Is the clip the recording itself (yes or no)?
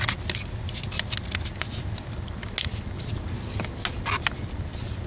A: yes